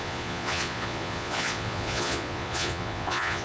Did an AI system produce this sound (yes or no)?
yes